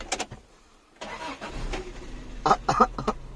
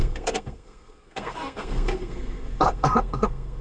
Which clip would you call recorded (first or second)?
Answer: first